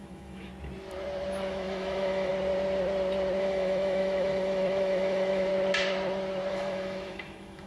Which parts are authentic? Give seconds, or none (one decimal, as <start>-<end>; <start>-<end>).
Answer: 0.5-1.5; 2.3-3.4; 5.5-6.5